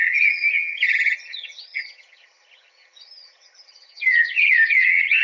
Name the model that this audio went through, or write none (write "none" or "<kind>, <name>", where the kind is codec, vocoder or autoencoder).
vocoder, HiFi-GAN